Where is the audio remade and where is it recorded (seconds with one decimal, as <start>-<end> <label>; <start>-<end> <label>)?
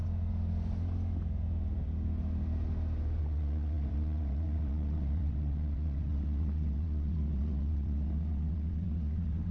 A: 0.0-3.2 recorded; 3.2-9.5 remade